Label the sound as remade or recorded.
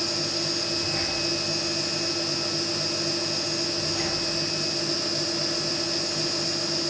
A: recorded